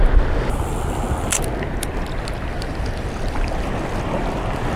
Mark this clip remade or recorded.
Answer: recorded